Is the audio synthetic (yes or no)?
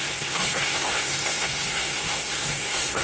yes